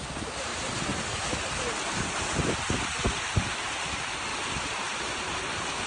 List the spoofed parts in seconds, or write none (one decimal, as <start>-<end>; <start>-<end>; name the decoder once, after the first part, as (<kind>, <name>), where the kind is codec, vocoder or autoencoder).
0.0-0.5 (vocoder, BigVGAN v2); 3.1-5.9